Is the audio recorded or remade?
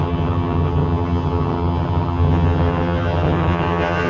remade